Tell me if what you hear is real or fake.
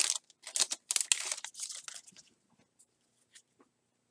real